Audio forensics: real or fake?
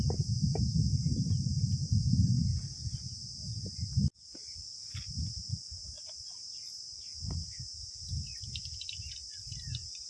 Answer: real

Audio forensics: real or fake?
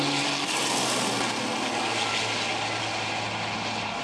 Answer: real